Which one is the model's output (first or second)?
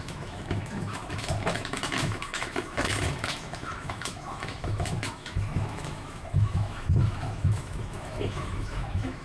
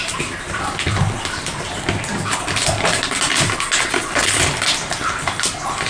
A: first